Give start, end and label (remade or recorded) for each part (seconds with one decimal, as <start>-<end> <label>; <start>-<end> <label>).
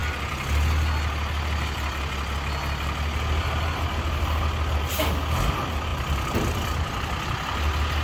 0.0-8.0 recorded